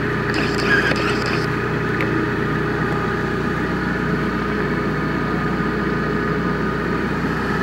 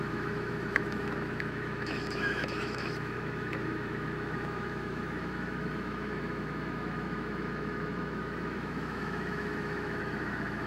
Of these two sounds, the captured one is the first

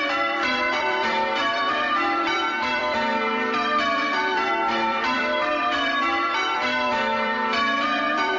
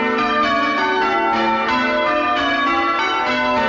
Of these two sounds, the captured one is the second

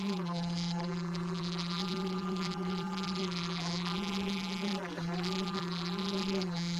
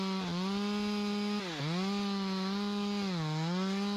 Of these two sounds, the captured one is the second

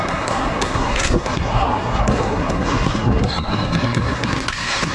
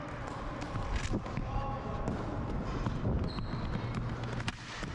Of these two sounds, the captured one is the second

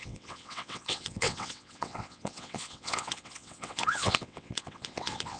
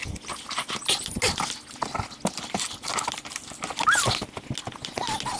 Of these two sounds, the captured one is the second